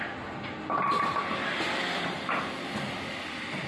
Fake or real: real